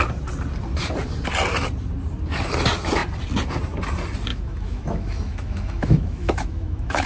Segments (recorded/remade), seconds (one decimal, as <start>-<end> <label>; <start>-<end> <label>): 0.0-4.3 recorded; 4.3-7.1 remade

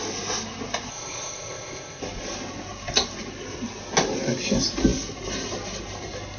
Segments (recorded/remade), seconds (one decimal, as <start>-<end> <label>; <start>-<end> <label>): 0.0-0.9 recorded; 0.9-2.0 remade; 2.0-6.4 recorded